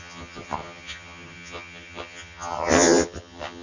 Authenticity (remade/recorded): remade